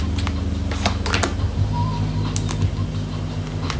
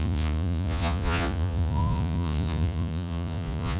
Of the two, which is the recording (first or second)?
first